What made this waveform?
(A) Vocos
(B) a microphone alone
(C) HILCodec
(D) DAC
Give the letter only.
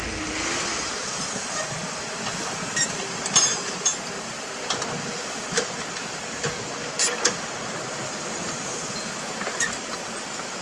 B